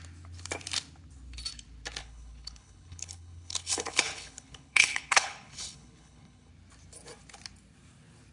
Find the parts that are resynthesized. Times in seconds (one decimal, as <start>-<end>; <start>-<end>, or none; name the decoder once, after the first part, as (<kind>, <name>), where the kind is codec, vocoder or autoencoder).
2.0-6.5 (codec, HILCodec)